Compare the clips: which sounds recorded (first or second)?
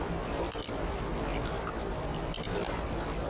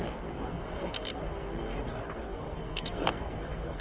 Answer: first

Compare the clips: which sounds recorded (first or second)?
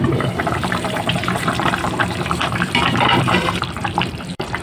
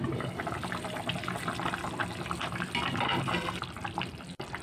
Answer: second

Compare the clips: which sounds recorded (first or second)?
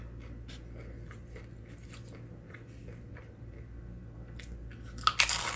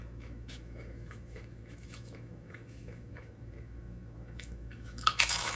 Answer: first